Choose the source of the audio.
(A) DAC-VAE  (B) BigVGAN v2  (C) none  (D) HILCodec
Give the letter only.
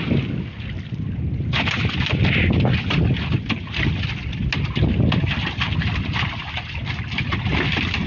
C